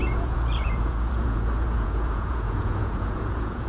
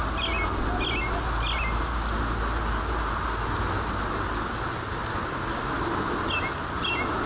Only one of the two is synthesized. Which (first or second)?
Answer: first